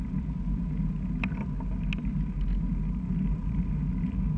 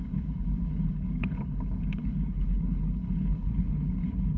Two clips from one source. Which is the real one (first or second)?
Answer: first